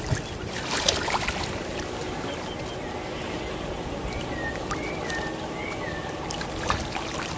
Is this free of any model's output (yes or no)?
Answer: yes